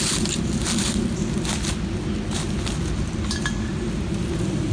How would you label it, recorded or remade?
recorded